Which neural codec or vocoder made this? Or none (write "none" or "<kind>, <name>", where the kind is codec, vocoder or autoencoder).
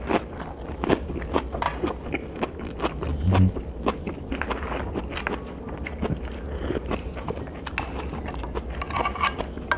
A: none